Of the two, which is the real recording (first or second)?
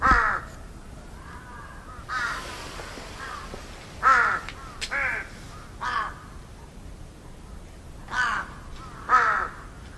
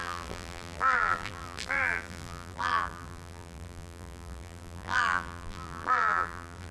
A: first